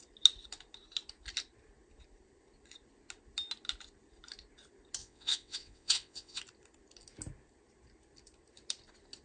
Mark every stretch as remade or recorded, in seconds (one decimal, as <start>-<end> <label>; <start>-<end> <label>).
0.0-5.0 recorded; 5.0-6.4 remade; 6.4-9.2 recorded

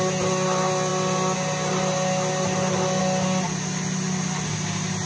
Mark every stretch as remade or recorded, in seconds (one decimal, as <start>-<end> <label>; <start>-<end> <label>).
0.0-5.1 recorded

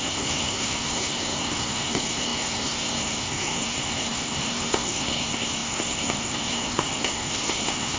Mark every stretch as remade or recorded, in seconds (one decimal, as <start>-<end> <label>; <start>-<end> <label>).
0.0-8.0 remade

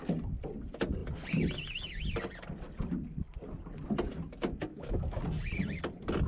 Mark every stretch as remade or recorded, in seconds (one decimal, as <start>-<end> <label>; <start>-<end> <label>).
0.0-4.7 recorded; 4.7-5.2 remade; 5.2-6.3 recorded

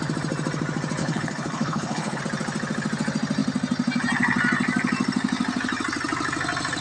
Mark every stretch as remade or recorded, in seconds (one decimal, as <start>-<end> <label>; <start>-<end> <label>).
0.0-1.0 recorded; 1.0-2.2 remade; 2.2-6.8 recorded